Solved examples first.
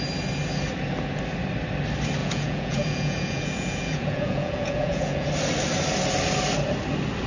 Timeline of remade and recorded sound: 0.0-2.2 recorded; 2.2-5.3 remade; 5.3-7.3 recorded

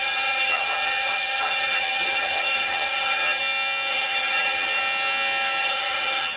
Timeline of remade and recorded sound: 0.0-3.4 remade; 3.4-3.9 recorded; 3.9-4.8 remade; 4.8-5.6 recorded; 5.6-6.4 remade

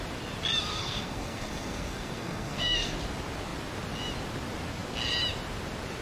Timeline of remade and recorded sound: 0.0-0.7 recorded; 0.7-2.9 remade; 2.9-6.0 recorded

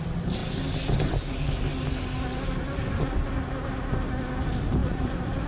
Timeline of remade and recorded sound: 0.0-4.8 recorded; 4.8-5.5 remade